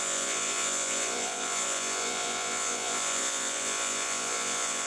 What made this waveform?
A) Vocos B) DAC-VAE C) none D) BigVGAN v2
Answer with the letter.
A